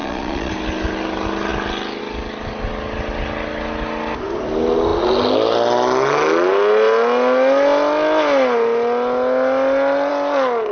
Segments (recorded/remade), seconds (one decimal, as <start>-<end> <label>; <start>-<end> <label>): 0.0-0.5 remade; 0.5-10.7 recorded